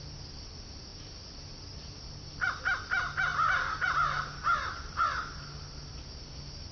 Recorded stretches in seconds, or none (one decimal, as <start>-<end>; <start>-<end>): 0.0-6.7